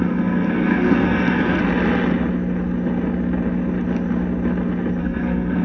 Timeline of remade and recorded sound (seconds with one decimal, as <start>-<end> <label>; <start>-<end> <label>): 0.0-1.6 remade; 1.6-5.0 recorded; 5.0-5.6 remade